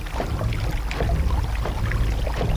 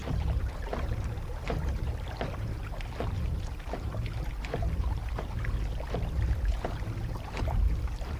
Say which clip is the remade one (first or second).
second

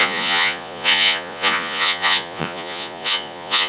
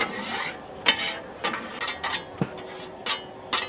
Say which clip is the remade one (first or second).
first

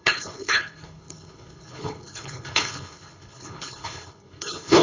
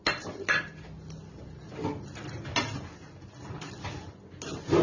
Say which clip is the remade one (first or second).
first